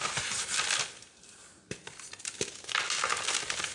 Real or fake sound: real